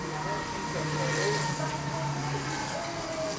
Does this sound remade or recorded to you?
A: recorded